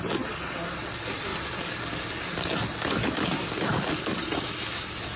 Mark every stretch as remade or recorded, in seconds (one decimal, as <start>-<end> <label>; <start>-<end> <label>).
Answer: 0.0-5.2 recorded